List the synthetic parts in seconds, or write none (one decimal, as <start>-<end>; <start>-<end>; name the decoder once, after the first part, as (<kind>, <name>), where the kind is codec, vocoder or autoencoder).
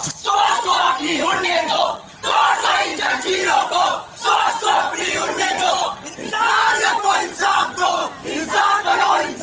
0.0-8.0 (vocoder, HiFi-GAN); 8.6-9.4